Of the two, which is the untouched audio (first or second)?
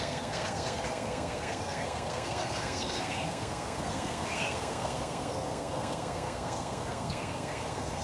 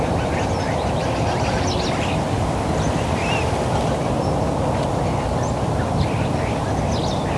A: second